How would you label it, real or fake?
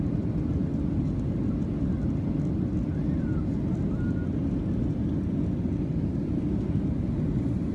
real